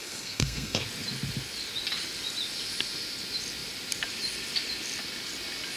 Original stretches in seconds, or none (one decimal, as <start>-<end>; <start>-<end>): 0.8-5.8